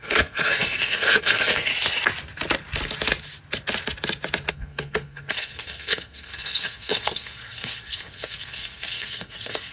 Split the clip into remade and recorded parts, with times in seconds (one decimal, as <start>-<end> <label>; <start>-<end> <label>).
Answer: 0.0-1.7 remade; 1.7-4.5 recorded; 4.5-9.7 remade